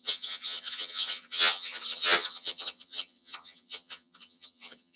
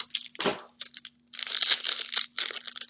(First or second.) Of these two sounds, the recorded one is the second